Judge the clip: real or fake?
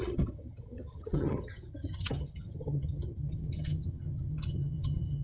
fake